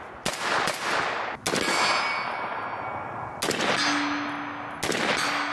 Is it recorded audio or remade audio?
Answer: recorded